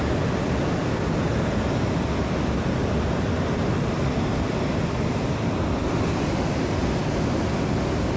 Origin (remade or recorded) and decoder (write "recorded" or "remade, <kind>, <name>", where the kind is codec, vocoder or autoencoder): recorded